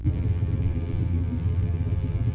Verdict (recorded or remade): remade